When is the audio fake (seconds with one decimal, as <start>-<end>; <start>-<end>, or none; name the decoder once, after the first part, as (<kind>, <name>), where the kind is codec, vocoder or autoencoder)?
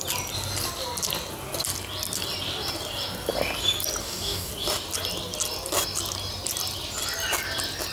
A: 4.0-4.5 (codec, DAC)